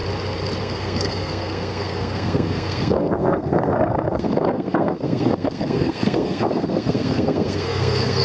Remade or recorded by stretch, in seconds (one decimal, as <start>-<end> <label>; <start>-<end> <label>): 0.0-0.6 recorded; 0.6-8.2 remade